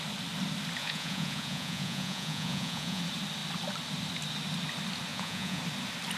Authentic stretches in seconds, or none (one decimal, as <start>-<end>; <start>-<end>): 0.0-0.8; 3.0-5.1; 5.6-6.2